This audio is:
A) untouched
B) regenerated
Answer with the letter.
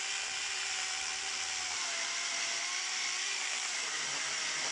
B